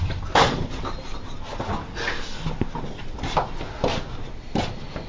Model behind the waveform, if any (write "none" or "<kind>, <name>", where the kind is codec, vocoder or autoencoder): none